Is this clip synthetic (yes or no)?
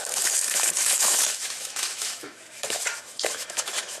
yes